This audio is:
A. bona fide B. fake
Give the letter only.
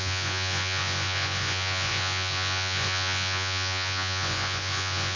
B